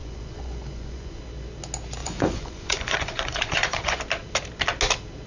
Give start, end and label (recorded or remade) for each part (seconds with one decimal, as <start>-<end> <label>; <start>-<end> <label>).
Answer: 0.0-1.2 remade; 1.2-2.0 recorded; 2.0-4.0 remade; 4.0-5.3 recorded